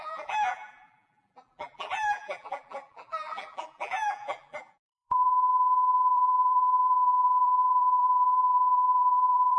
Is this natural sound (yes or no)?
no